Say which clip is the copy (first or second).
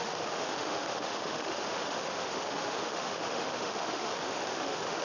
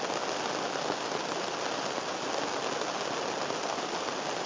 first